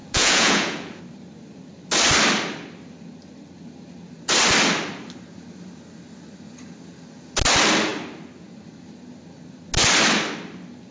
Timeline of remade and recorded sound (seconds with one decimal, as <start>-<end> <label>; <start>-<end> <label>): 0.0-1.0 remade; 1.0-10.9 recorded

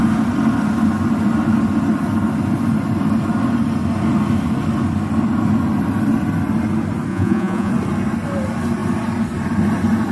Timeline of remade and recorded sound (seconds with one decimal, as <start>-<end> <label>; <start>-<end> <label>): 0.0-7.1 recorded; 7.1-7.7 remade; 7.7-10.1 recorded

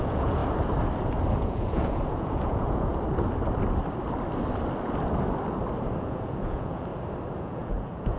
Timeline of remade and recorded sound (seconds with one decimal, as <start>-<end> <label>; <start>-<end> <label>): 0.0-0.4 remade; 0.4-1.3 recorded; 1.3-2.9 remade; 2.9-6.0 recorded; 6.0-6.9 remade; 6.9-7.4 recorded; 7.4-8.2 remade